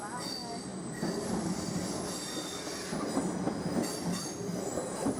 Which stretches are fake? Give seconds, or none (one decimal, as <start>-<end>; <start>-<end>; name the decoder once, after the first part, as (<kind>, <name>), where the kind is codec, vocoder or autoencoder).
none